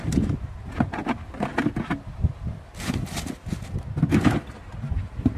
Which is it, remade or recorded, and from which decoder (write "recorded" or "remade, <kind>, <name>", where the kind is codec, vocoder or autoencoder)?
recorded